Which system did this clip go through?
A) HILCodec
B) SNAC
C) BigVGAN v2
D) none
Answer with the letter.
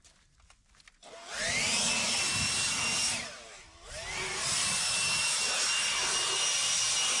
D